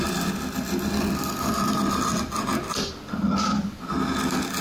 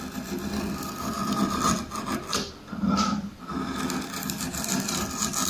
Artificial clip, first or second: second